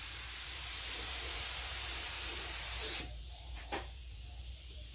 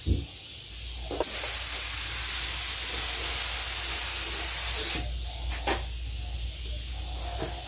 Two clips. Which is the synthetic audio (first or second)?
first